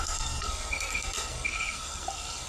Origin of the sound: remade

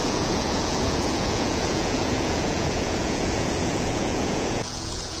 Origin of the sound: remade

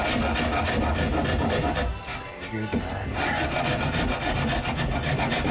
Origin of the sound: recorded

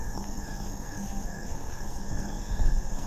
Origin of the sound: remade